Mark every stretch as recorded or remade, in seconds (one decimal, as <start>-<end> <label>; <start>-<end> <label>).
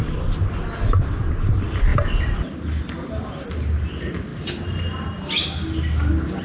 0.0-6.4 recorded